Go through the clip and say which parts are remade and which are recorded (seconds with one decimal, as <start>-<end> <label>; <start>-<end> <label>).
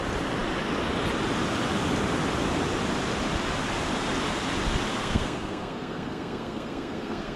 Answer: 0.0-5.0 recorded; 5.0-7.4 remade